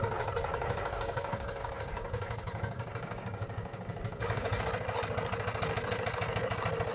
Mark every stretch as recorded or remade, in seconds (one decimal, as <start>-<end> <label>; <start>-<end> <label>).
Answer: 0.0-0.5 recorded; 0.5-4.6 remade; 4.6-6.9 recorded